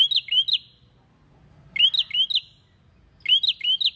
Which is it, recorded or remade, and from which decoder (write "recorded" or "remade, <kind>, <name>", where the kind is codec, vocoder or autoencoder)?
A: recorded